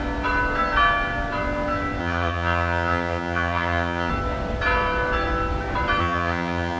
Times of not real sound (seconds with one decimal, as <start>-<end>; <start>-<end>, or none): 2.0-4.1; 6.0-6.8